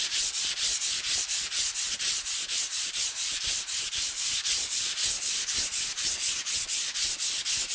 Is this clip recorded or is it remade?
remade